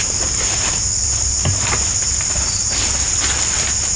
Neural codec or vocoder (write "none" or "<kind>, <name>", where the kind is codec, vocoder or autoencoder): none